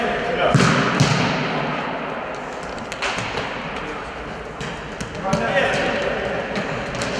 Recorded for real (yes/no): yes